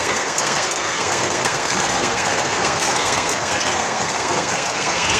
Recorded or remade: remade